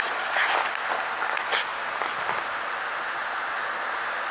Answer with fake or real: real